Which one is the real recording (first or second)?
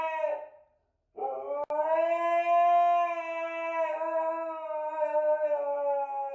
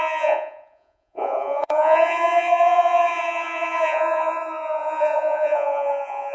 first